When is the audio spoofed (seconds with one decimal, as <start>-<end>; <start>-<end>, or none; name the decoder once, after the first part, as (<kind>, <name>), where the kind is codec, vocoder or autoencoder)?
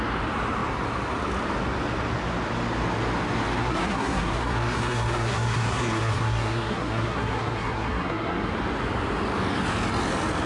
3.6-8.5 (codec, SNAC)